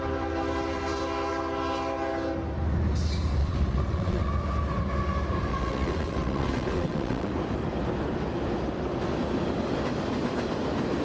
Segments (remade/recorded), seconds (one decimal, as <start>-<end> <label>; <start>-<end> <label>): 0.0-3.4 recorded; 3.4-4.3 remade; 4.3-5.5 recorded; 5.5-7.3 remade; 7.3-11.0 recorded